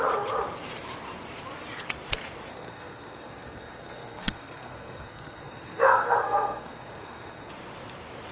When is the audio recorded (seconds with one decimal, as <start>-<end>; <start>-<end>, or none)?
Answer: 0.0-2.5; 7.5-8.3